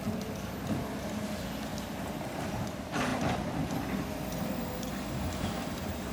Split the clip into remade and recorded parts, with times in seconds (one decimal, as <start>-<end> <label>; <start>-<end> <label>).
0.0-1.7 recorded; 1.7-2.7 remade; 2.7-6.1 recorded